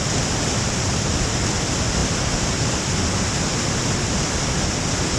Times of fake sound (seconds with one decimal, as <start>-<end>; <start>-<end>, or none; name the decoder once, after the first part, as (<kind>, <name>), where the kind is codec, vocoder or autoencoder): none